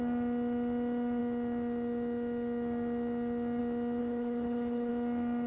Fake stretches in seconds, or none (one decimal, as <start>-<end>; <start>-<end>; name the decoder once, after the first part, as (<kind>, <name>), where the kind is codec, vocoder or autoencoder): 4.0-4.9 (codec, HILCodec)